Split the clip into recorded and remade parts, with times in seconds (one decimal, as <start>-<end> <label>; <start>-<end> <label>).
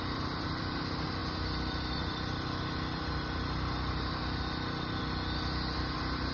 0.0-6.3 remade